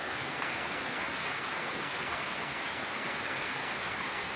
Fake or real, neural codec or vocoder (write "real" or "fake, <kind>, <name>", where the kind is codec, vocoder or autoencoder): fake, codec, SNAC